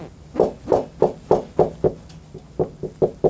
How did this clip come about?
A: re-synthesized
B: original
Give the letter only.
B